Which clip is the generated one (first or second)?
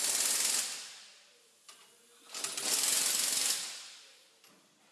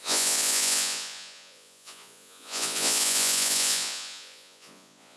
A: second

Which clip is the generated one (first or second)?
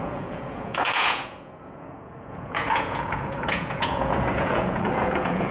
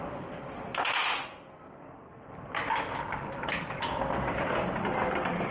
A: first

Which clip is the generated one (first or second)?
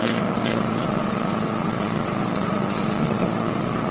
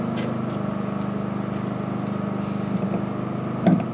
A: first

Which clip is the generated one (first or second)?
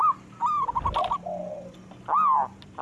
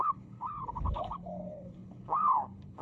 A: second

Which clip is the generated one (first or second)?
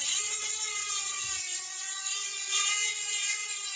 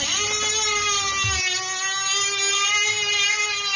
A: first